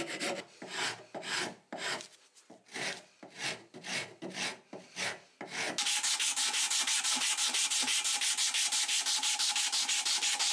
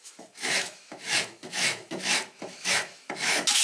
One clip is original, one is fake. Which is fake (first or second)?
second